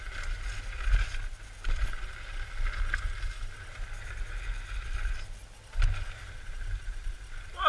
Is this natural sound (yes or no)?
yes